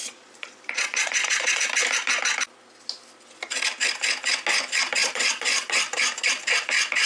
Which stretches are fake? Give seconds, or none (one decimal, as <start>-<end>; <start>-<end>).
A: 0.0-1.6; 5.0-5.8